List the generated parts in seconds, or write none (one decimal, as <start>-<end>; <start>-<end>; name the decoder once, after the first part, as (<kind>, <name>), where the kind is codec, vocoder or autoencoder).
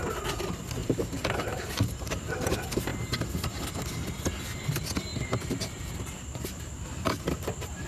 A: 0.8-2.5 (vocoder, BigVGAN v2); 5.1-7.9